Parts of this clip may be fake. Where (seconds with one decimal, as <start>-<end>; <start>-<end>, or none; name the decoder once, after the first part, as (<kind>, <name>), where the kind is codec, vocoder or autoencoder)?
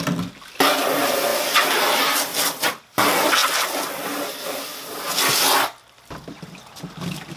1.3-1.8 (vocoder, BigVGAN v2); 3.4-5.1